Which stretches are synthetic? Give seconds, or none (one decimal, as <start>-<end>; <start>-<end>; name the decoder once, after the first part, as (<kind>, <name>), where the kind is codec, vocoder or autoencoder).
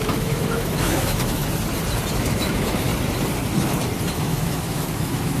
0.0-1.4 (autoencoder, DAC-VAE); 2.1-2.9; 4.1-5.4